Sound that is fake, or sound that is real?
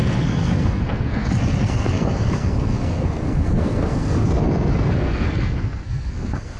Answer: fake